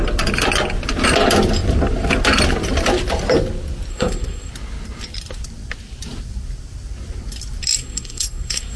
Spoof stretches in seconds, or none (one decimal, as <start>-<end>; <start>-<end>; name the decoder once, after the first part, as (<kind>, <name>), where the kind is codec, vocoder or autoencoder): 3.9-4.5 (codec, SNAC); 7.8-8.8